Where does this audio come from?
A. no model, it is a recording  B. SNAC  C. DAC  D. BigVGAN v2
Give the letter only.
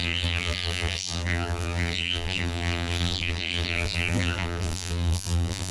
D